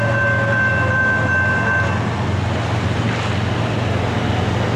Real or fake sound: real